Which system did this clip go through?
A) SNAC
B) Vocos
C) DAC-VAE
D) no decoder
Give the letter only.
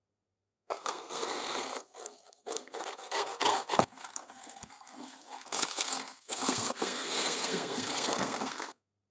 A